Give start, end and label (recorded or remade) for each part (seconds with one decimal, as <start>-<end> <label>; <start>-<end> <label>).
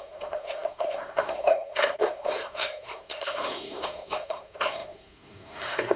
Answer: 0.0-6.0 remade